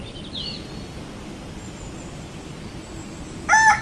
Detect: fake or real real